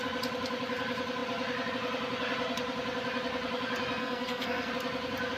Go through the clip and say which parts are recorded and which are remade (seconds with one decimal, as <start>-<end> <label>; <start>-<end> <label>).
0.0-4.0 recorded; 4.0-4.7 remade; 4.7-5.4 recorded